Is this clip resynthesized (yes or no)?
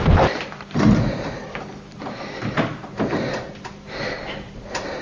no